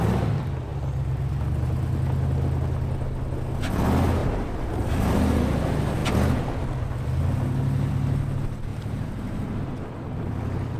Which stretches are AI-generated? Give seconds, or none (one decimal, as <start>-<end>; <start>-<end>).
4.2-5.4; 8.7-9.6